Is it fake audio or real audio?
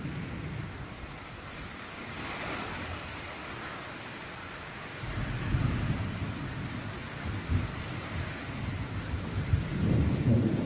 real